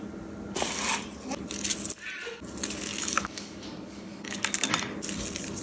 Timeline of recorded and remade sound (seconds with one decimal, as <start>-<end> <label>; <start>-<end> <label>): 0.0-2.9 recorded; 2.9-4.7 remade; 4.7-5.6 recorded